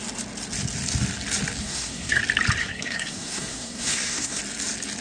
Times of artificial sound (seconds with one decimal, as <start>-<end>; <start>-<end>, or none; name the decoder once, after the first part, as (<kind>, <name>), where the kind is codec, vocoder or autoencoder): 1.6-2.2 (codec, SNAC); 2.6-4.4